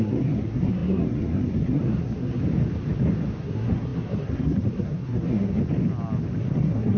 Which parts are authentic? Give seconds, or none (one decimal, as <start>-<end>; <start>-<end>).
2.4-3.4; 5.6-6.4